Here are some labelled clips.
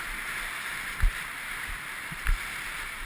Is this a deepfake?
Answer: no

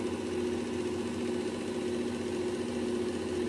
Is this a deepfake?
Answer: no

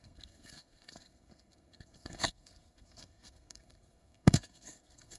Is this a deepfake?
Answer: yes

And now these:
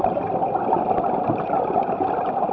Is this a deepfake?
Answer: no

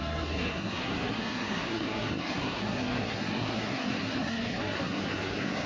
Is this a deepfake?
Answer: yes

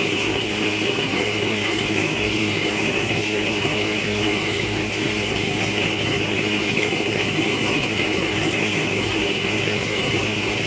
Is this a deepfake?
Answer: yes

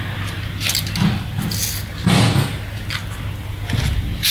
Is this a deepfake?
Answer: no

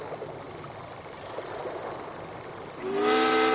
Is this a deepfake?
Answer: no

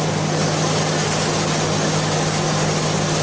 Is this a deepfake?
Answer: no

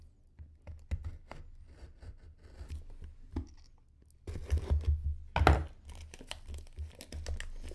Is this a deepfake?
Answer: no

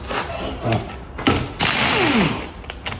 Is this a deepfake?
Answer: no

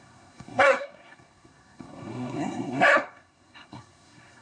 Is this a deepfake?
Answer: yes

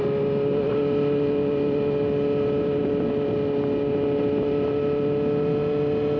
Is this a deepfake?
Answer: no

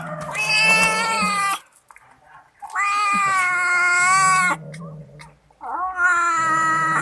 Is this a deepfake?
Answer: no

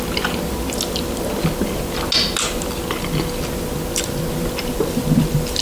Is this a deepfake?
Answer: no